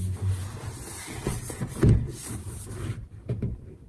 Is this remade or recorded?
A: recorded